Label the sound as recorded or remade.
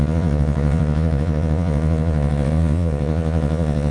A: remade